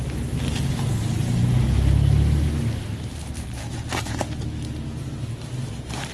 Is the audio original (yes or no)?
yes